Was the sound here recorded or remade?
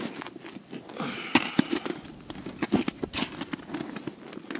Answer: recorded